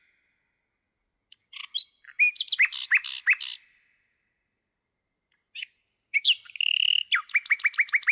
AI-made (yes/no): no